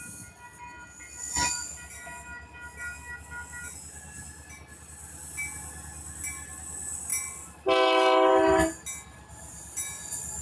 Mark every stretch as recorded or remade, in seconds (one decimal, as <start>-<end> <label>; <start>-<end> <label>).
0.0-10.4 recorded